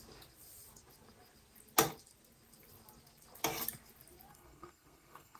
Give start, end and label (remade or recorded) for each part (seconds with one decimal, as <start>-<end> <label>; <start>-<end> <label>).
0.0-4.3 recorded; 4.3-5.4 remade